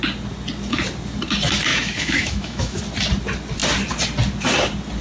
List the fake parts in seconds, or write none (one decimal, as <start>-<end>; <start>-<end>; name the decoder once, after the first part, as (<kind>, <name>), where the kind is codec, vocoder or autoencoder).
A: 1.7-2.8 (autoencoder, DAC-VAE)